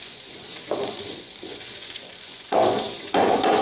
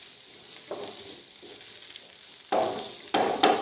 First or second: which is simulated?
first